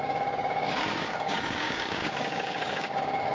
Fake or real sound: fake